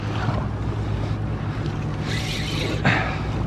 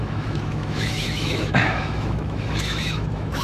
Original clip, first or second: first